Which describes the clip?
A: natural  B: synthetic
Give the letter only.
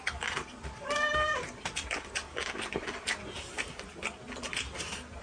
A